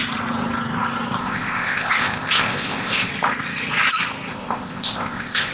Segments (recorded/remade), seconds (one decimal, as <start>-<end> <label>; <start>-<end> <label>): 0.0-1.2 recorded; 1.2-3.1 remade; 3.1-4.3 recorded; 4.3-5.5 remade